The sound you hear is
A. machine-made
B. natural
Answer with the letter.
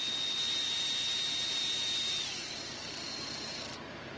B